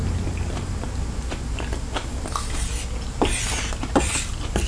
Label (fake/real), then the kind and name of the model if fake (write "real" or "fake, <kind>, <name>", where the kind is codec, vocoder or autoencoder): real